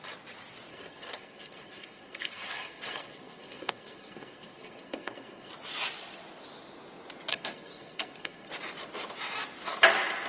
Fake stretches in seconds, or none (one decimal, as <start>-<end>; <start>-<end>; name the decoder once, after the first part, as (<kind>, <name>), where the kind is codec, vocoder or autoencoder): 0.7-5.5 (codec, SNAC); 7.3-8.5